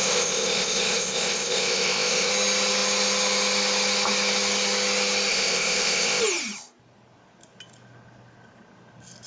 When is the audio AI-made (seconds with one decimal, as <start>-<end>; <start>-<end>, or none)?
0.0-2.3; 5.3-6.2